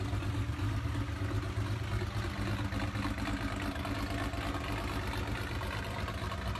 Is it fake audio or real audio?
real